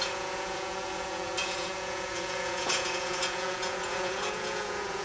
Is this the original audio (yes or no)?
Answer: no